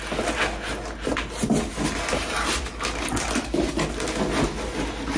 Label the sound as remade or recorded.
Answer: recorded